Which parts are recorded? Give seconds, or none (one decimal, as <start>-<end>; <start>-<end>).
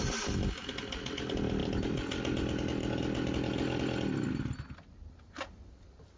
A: 0.0-6.2